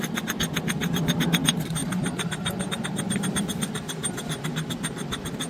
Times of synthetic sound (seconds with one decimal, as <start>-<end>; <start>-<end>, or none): 1.8-2.7